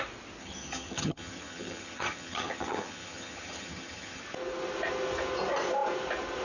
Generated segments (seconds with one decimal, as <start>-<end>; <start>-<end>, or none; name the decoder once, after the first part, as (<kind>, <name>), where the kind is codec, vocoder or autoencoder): 0.4-4.2 (vocoder, HiFi-GAN)